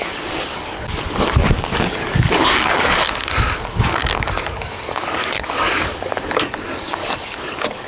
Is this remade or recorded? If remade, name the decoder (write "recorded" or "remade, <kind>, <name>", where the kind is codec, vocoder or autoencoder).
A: remade, codec, DAC